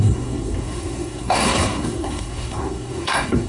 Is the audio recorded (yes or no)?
no